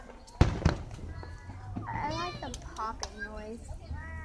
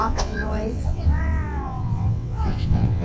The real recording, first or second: first